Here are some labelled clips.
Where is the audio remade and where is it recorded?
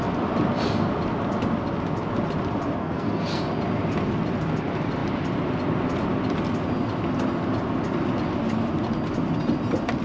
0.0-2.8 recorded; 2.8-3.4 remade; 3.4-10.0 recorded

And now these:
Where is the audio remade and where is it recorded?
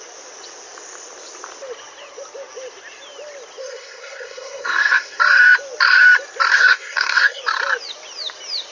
0.0-3.6 recorded; 3.6-5.2 remade; 5.2-6.5 recorded; 6.5-7.4 remade; 7.4-8.7 recorded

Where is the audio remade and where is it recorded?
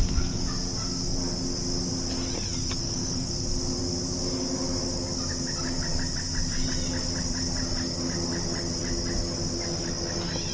0.0-2.8 recorded; 2.8-3.3 remade; 3.3-10.5 recorded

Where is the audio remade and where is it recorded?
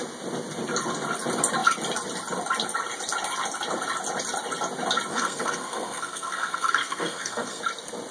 0.0-5.1 recorded; 5.1-7.6 remade; 7.6-8.1 recorded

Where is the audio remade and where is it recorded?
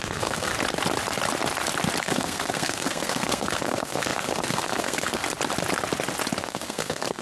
0.0-0.5 remade; 0.5-2.0 recorded; 2.0-5.2 remade; 5.2-6.4 recorded; 6.4-7.2 remade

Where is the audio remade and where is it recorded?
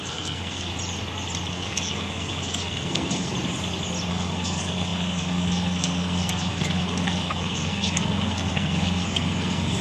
0.0-0.7 remade; 0.7-1.5 recorded; 1.5-3.3 remade; 3.3-4.1 recorded; 4.1-9.8 remade